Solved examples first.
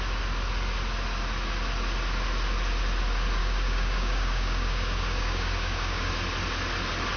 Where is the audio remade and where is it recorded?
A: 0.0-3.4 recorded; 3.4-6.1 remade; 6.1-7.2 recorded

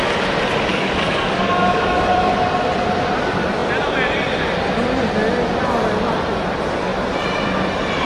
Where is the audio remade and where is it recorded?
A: 0.0-0.7 recorded; 0.7-2.3 remade; 2.3-8.0 recorded

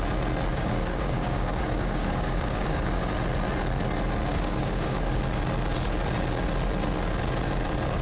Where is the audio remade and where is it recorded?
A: 0.0-0.5 recorded; 0.5-3.1 remade; 3.1-4.3 recorded; 4.3-5.2 remade; 5.2-8.0 recorded

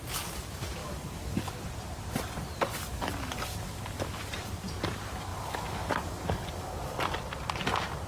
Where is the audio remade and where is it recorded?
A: 0.0-0.8 recorded; 0.8-1.5 remade; 1.5-2.9 recorded; 2.9-4.2 remade; 4.2-5.3 recorded; 5.3-7.0 remade; 7.0-8.1 recorded

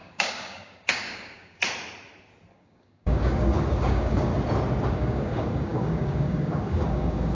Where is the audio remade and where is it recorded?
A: 0.0-1.6 remade; 1.6-2.5 recorded; 2.5-4.3 remade; 4.3-4.9 recorded; 4.9-7.3 remade

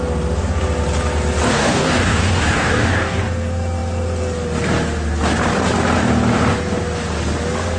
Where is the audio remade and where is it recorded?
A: 0.0-1.5 recorded; 1.5-3.2 remade; 3.2-7.8 recorded

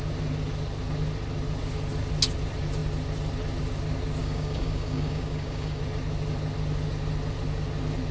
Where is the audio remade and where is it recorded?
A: 0.0-4.2 recorded; 4.2-5.8 remade; 5.8-8.1 recorded

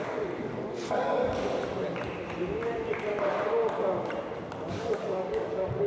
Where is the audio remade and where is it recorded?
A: 0.0-1.2 remade; 1.2-4.7 recorded; 4.7-5.9 remade